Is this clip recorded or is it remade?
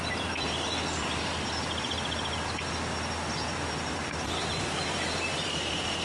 remade